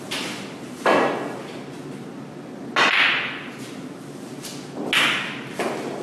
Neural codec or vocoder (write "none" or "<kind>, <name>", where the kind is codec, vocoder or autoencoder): none